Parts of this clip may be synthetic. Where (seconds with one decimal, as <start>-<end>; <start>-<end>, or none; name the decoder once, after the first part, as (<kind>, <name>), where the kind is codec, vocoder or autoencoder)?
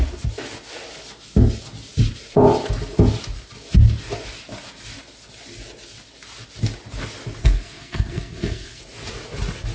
7.4-8.8 (codec, SNAC)